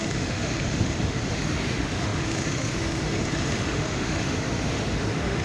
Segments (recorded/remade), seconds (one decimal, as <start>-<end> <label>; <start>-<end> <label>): 0.0-5.4 remade